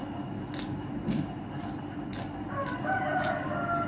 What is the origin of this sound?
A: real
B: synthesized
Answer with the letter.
A